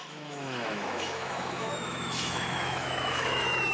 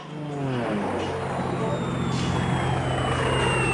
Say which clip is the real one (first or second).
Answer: second